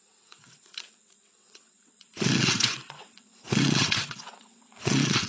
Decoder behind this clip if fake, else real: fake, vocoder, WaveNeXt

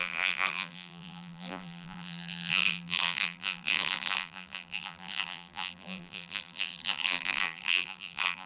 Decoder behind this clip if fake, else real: fake, vocoder, BigVGAN v2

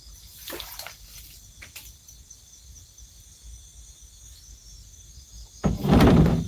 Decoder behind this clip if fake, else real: real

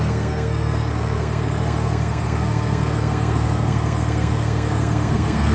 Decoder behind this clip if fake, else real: fake, codec, SNAC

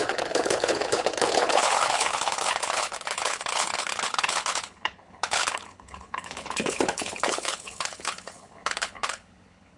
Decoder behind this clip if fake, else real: fake, codec, HILCodec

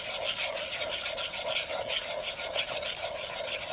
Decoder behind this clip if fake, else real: real